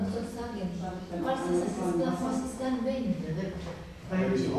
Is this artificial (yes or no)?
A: no